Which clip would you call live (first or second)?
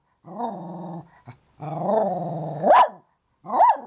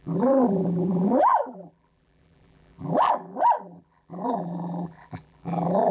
first